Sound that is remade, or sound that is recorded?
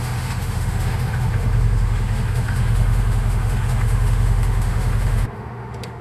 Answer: remade